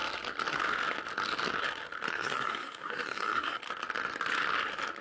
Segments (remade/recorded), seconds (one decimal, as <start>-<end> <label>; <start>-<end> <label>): 0.0-2.1 recorded; 2.1-3.6 remade; 3.6-5.0 recorded